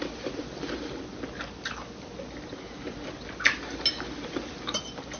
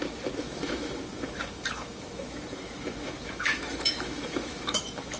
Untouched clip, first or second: first